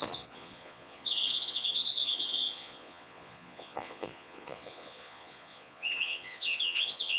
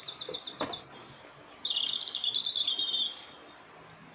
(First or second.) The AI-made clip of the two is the first